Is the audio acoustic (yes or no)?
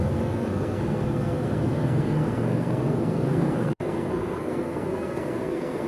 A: no